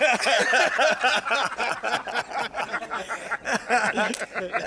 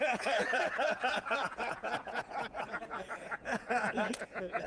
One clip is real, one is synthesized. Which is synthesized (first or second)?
second